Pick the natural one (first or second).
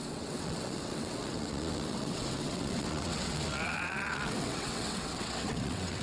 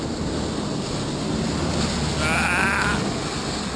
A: second